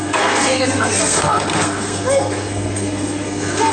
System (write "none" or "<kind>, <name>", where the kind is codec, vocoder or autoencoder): codec, SNAC